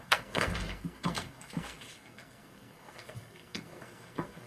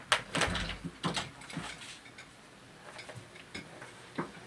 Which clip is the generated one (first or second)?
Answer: first